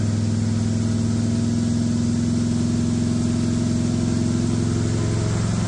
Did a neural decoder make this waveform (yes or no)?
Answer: no